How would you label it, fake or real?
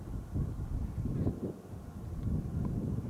real